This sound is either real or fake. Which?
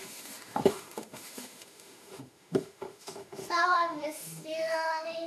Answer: fake